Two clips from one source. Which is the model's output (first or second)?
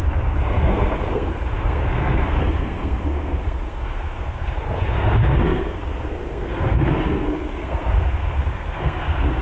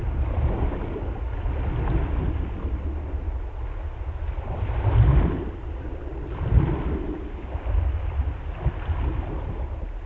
first